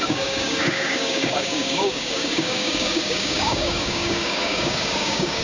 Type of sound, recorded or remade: remade